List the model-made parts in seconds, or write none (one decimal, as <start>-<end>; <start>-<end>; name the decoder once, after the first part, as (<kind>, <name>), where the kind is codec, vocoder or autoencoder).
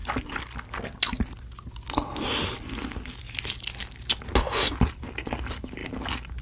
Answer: none